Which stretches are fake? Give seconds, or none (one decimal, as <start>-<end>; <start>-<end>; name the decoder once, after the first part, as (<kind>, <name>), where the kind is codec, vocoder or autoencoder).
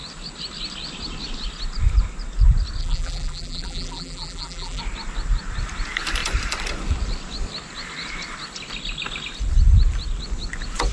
2.8-4.8 (vocoder, BigVGAN v2)